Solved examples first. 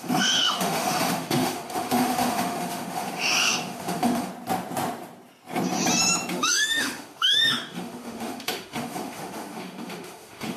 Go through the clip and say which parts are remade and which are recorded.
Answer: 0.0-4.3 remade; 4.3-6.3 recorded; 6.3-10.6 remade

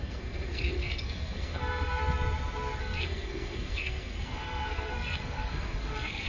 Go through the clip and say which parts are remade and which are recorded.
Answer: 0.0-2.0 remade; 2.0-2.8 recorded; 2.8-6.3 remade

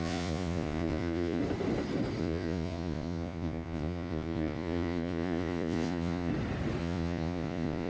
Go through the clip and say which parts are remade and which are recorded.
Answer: 0.0-1.4 remade; 1.4-2.2 recorded; 2.2-6.3 remade; 6.3-6.8 recorded; 6.8-7.9 remade

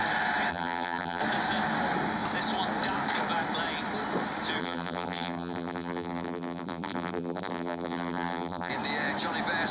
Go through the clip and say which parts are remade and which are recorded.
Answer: 0.0-0.5 recorded; 0.5-1.2 remade; 1.2-4.6 recorded; 4.6-8.7 remade; 8.7-9.7 recorded

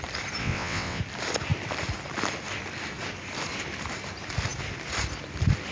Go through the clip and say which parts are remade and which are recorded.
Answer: 0.0-0.4 recorded; 0.4-1.0 remade; 1.0-5.7 recorded

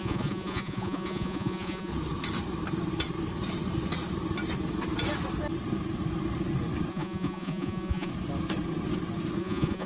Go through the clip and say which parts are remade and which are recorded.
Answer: 0.0-1.9 remade; 1.9-6.9 recorded; 6.9-8.1 remade; 8.1-9.4 recorded; 9.4-9.9 remade

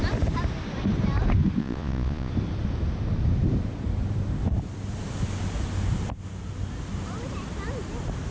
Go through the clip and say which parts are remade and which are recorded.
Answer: 0.0-1.6 recorded; 1.6-2.3 remade; 2.3-8.3 recorded

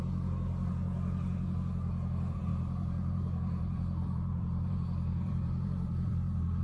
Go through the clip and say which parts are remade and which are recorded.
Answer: 0.0-2.5 recorded; 2.5-6.6 remade